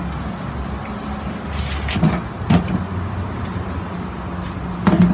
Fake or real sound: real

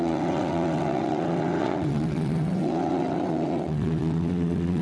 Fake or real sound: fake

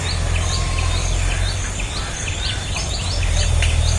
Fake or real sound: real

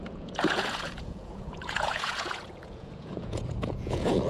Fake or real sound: fake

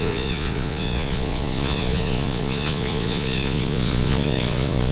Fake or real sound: fake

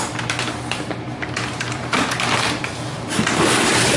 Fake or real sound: fake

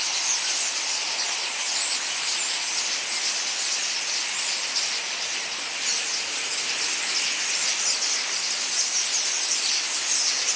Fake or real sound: real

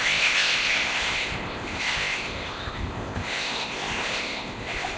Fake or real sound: fake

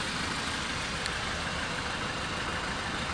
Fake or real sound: real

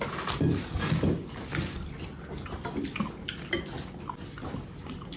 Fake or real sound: real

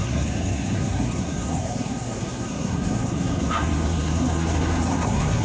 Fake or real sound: fake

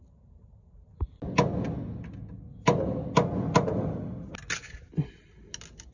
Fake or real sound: real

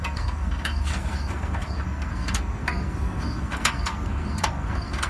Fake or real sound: fake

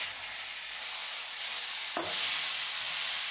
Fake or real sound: real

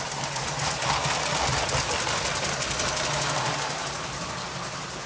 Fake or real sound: real